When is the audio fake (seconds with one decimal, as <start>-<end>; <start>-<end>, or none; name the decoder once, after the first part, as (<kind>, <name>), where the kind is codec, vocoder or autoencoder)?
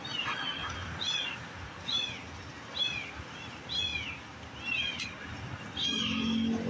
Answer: 0.6-2.2 (vocoder, Vocos)